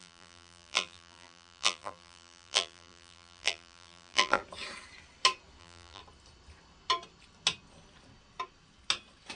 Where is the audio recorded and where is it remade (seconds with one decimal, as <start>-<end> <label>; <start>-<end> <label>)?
0.0-4.4 remade; 4.4-5.6 recorded; 5.6-6.0 remade; 6.0-9.4 recorded